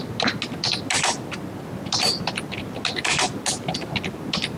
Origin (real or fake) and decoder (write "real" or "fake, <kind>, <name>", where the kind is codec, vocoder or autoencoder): real